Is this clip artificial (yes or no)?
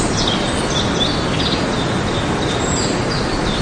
no